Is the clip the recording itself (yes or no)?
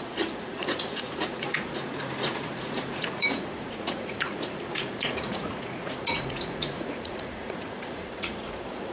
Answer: no